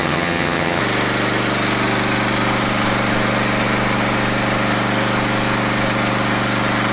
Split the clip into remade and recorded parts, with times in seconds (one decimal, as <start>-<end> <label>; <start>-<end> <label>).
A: 0.0-0.8 remade; 0.8-6.9 recorded